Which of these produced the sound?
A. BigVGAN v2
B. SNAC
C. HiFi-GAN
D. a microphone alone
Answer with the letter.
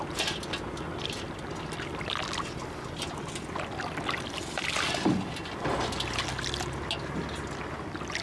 D